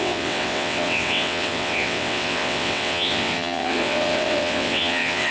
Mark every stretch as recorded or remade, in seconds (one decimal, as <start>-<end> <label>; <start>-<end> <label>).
0.0-5.3 remade